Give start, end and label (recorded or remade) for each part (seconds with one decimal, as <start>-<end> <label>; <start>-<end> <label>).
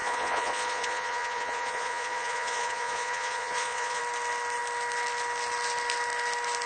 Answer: 0.0-4.0 remade; 4.0-6.7 recorded